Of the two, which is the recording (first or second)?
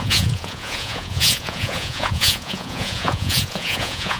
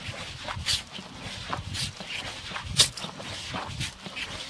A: second